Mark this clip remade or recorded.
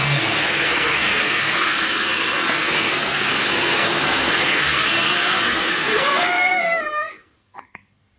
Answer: remade